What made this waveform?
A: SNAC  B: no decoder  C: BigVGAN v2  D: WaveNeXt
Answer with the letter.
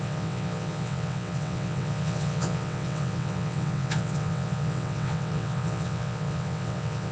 D